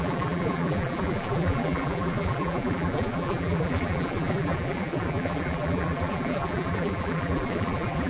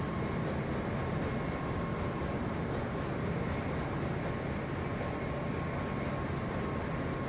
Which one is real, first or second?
second